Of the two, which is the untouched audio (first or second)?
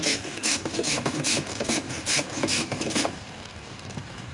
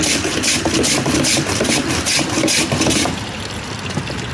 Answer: second